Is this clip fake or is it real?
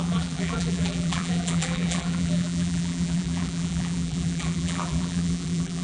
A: fake